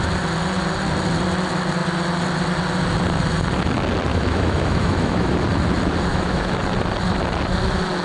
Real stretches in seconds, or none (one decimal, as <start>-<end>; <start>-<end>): 0.0-4.1; 5.3-6.1; 6.6-8.0